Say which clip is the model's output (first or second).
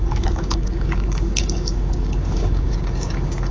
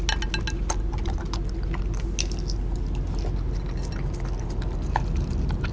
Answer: first